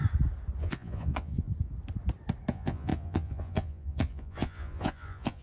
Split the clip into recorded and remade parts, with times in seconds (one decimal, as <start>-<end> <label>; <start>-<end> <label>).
0.0-0.6 recorded; 0.6-1.5 remade; 1.5-2.5 recorded; 2.5-5.4 remade